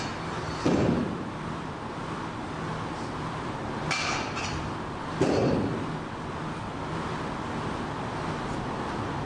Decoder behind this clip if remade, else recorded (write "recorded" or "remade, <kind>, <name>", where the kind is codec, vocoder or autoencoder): recorded